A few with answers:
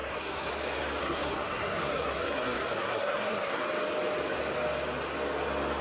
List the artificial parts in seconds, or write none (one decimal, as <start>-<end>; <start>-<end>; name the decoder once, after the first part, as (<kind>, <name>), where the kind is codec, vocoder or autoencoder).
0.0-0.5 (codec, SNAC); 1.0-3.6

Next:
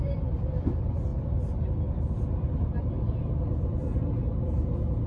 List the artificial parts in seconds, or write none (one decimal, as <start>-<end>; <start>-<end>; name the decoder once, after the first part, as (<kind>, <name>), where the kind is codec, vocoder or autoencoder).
none

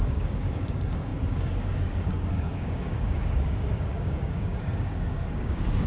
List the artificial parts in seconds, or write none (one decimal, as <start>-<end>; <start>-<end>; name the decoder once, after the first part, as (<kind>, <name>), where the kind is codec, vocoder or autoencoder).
0.0-5.9 (codec, DAC)

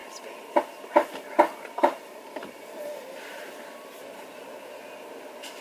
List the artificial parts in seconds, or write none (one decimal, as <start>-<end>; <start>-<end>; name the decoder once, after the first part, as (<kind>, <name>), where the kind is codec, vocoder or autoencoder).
0.0-0.6 (vocoder, BigVGAN v2); 1.8-4.3

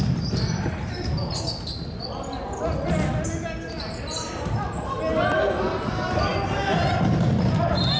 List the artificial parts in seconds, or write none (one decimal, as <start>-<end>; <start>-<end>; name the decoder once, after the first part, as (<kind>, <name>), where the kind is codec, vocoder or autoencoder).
none

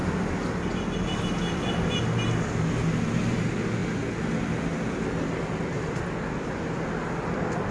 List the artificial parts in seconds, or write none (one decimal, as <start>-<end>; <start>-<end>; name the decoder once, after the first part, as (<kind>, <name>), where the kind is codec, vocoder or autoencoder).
none